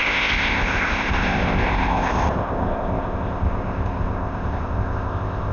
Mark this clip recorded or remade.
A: remade